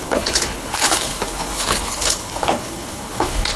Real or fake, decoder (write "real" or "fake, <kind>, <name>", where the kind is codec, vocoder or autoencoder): fake, codec, HILCodec